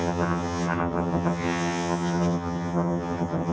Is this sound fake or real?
fake